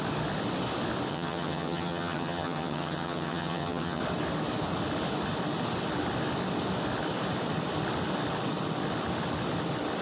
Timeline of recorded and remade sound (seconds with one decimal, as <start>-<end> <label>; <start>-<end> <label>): 0.0-1.1 recorded; 1.1-4.0 remade; 4.0-10.0 recorded